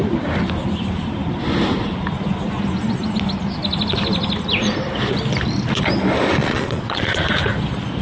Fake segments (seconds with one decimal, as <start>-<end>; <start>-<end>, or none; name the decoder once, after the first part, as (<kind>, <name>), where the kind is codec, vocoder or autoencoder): 6.4-7.3 (vocoder, Vocos)